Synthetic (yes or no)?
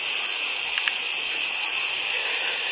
yes